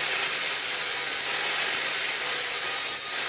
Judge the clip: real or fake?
real